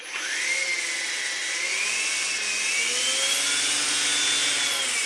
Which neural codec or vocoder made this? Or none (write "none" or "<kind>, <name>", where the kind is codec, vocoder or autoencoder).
none